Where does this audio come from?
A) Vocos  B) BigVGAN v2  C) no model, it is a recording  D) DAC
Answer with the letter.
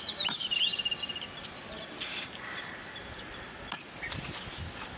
C